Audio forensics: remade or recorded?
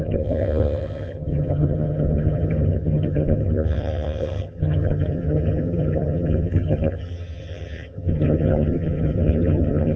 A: remade